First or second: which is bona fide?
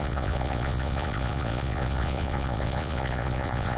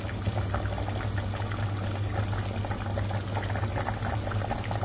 second